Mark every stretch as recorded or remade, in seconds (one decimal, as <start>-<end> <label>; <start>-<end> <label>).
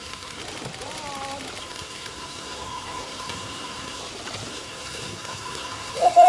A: 0.0-0.4 remade; 0.4-1.6 recorded; 1.6-4.0 remade; 4.0-4.5 recorded; 4.5-6.3 remade